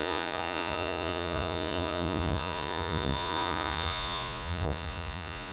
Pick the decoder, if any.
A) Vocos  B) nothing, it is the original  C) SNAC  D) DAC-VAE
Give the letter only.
A